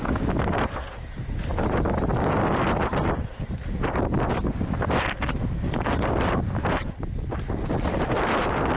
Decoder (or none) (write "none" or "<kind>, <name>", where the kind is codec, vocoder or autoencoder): none